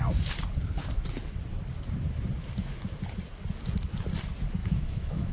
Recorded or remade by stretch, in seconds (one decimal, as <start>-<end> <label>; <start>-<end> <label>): 0.0-4.6 recorded; 4.6-5.3 remade